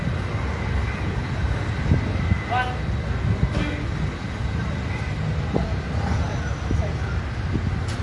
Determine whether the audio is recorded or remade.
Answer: recorded